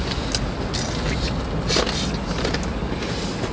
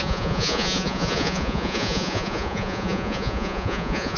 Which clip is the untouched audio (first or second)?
first